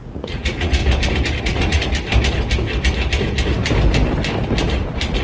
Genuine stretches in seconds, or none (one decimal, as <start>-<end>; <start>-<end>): 0.8-1.4; 1.8-5.2